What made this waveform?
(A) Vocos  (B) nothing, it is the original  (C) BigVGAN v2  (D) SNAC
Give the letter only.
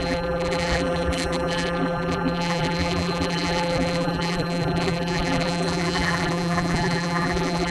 C